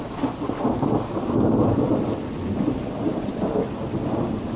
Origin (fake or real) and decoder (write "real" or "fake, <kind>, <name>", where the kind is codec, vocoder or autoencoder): real